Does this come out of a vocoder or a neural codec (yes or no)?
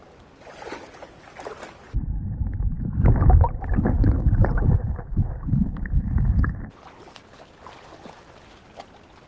no